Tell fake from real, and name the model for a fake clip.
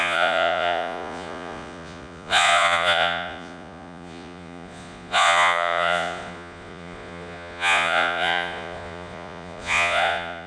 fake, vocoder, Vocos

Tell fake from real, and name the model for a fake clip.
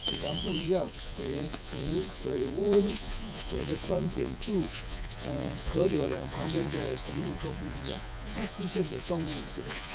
fake, vocoder, Vocos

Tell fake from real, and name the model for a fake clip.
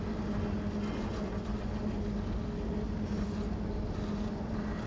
real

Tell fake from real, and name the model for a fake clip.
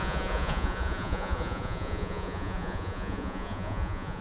fake, vocoder, Vocos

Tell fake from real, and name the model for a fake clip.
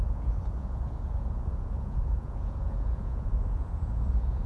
fake, vocoder, Vocos